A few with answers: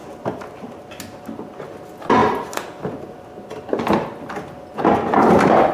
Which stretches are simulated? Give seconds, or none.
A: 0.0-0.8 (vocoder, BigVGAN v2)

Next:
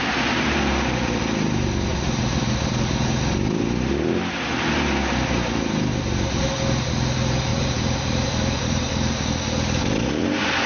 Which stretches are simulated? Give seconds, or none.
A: 1.9-3.2 (vocoder, BigVGAN v2); 7.5-9.4

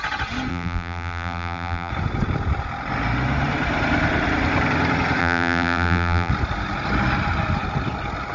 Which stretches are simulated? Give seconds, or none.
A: 0.5-1.9 (vocoder, BigVGAN v2); 5.2-6.3

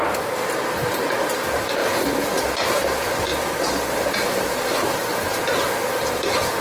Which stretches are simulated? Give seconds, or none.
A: 0.0-0.8 (vocoder, BigVGAN v2); 1.4-1.8; 2.4-3.3; 3.9-5.1; 6.0-6.6

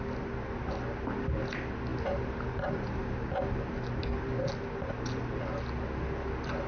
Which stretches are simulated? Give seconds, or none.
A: 1.9-3.0 (vocoder, BigVGAN v2)

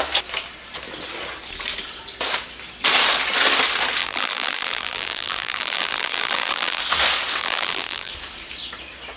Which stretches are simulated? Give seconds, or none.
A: 4.0-6.8 (vocoder, BigVGAN v2); 7.4-8.1

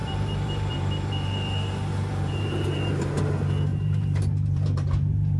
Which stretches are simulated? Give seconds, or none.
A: 0.0-3.2 (vocoder, BigVGAN v2); 3.7-5.4

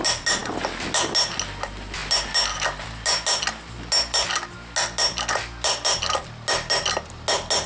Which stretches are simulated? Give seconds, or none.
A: none